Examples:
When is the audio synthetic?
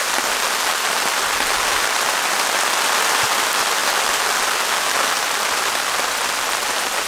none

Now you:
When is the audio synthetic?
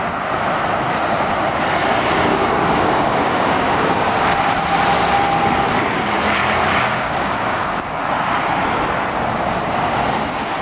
2.3-4.1 (codec, DAC); 6.7-8.0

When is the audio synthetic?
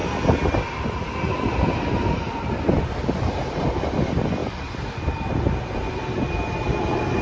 none